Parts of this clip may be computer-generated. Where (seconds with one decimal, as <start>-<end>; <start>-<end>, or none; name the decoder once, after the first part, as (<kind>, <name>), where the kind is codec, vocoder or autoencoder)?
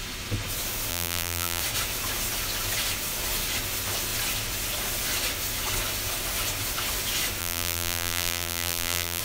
0.9-1.6 (vocoder, BigVGAN v2); 7.4-9.2